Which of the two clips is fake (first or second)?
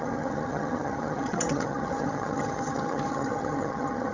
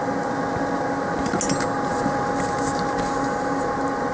first